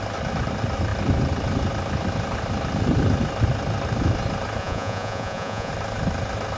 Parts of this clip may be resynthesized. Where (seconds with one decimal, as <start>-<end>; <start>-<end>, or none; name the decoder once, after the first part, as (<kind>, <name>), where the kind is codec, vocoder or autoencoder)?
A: 4.6-5.7 (vocoder, Vocos)